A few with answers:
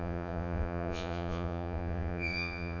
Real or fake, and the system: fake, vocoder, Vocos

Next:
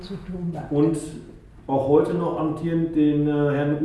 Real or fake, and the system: real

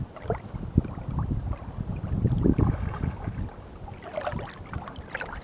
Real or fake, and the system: real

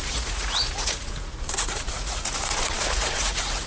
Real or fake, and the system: fake, vocoder, Vocos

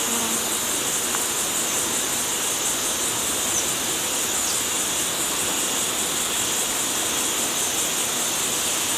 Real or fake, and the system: real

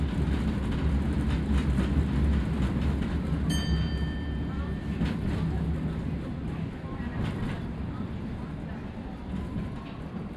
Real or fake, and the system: real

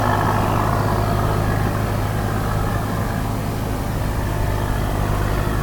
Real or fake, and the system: real